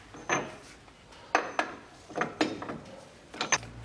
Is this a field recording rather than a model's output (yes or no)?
yes